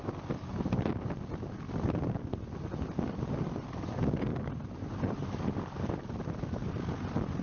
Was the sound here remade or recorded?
recorded